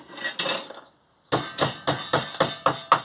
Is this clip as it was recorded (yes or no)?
yes